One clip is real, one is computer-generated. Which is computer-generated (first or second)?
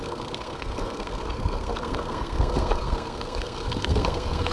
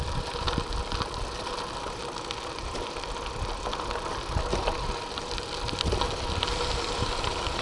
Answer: first